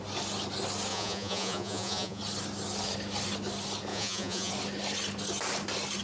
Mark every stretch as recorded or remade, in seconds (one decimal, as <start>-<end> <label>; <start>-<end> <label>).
0.0-0.9 recorded; 0.9-2.2 remade; 2.2-3.9 recorded; 3.9-4.5 remade; 4.5-6.0 recorded